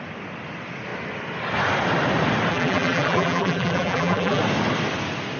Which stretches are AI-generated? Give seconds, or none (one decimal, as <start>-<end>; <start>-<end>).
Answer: 2.5-4.4